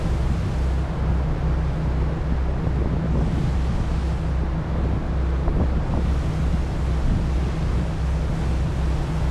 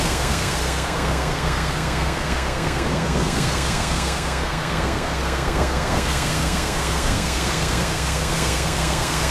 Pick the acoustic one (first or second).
first